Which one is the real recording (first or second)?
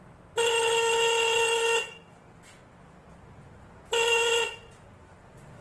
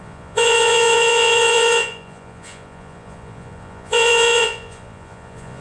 first